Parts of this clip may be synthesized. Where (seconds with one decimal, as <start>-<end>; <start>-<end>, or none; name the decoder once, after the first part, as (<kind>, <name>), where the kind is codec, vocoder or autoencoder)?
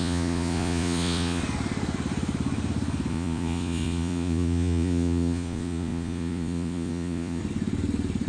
0.0-1.4 (vocoder, Vocos); 3.1-7.4